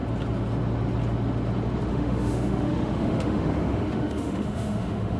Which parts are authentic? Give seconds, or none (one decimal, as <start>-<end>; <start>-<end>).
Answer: 0.0-1.9